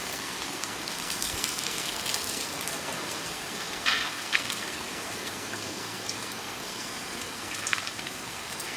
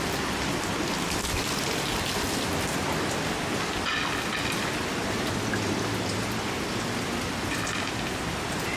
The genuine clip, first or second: second